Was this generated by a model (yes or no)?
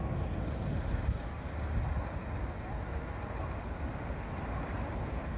no